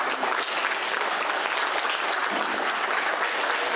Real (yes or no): yes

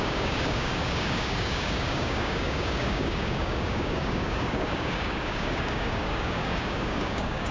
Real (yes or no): no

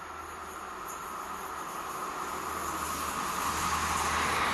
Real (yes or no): yes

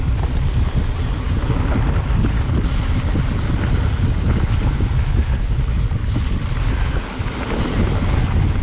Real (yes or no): yes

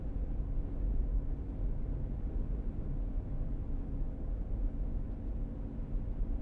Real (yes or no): yes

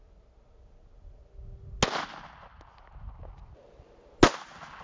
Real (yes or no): yes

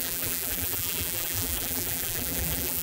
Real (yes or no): no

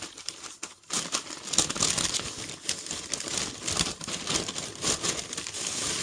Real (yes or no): yes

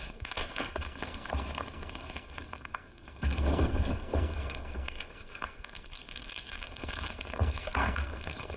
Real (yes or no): no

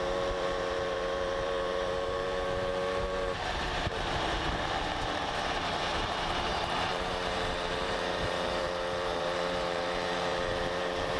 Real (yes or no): no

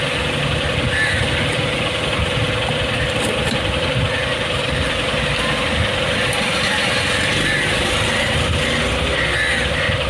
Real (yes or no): yes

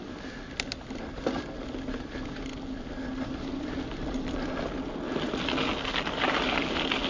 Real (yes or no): yes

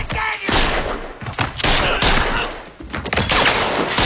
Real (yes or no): yes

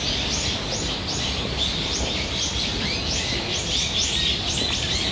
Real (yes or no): no